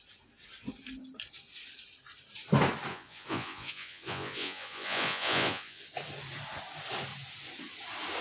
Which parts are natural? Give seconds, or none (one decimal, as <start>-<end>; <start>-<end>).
0.0-2.9; 5.8-8.2